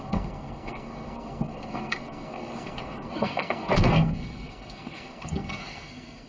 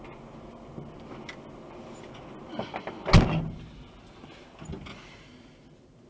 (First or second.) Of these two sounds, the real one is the second